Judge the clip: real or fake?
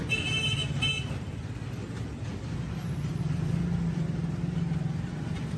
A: real